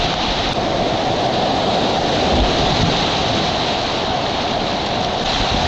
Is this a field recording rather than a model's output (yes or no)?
yes